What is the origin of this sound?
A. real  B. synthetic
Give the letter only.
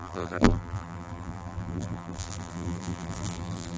B